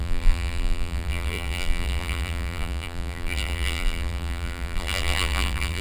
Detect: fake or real fake